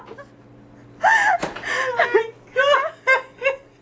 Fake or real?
real